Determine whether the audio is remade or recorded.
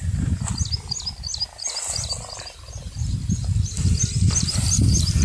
recorded